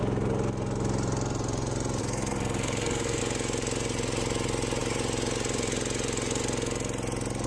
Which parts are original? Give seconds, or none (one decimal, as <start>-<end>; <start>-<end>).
0.0-2.0; 3.2-7.5